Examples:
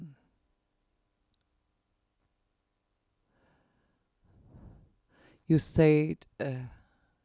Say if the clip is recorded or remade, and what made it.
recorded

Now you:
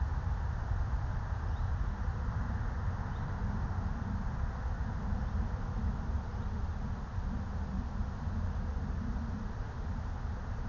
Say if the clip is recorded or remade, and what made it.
recorded